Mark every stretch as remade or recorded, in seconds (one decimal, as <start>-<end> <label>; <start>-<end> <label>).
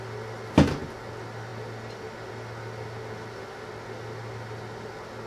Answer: 0.0-5.3 recorded